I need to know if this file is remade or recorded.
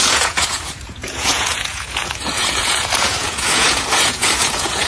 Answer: remade